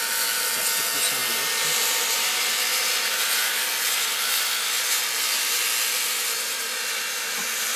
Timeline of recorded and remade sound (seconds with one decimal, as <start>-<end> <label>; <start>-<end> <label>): 0.0-7.8 recorded